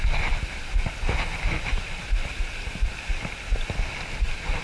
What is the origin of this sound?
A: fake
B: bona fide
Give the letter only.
B